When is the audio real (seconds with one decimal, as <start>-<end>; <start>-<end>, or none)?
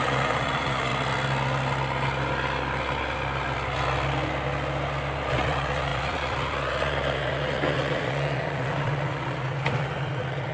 0.9-5.3